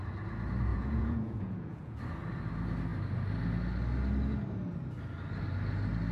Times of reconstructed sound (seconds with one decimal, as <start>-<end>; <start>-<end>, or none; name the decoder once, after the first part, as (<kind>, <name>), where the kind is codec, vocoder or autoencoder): 0.7-2.0 (vocoder, Vocos)